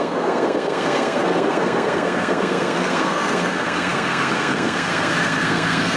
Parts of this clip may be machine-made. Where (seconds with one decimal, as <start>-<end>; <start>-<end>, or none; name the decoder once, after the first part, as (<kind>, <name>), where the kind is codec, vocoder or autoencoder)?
0.0-6.0 (codec, SNAC)